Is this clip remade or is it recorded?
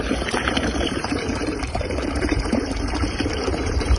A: remade